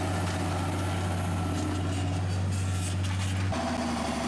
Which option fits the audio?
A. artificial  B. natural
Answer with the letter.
B